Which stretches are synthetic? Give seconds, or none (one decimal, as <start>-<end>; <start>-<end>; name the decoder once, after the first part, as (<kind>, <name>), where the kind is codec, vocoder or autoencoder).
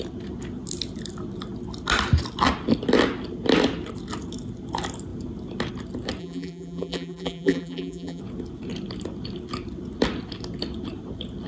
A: 6.2-8.2 (vocoder, BigVGAN v2)